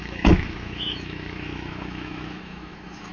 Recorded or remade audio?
remade